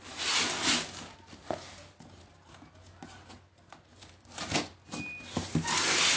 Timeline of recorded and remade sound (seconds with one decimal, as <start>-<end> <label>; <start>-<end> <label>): 0.0-3.9 recorded; 3.9-4.5 remade; 4.5-6.2 recorded